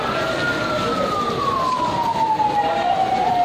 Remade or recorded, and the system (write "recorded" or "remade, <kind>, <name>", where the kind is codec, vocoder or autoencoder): recorded